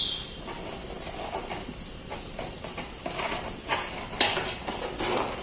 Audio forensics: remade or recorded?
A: recorded